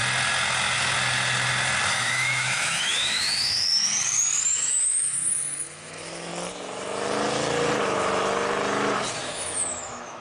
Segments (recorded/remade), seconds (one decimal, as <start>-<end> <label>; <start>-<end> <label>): 0.0-1.9 recorded; 1.9-3.7 remade; 3.7-4.4 recorded; 4.4-6.3 remade; 6.3-9.2 recorded; 9.2-10.2 remade